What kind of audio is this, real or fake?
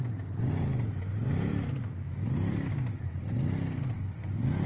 real